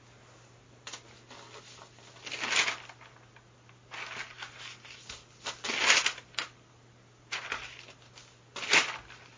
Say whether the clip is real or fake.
real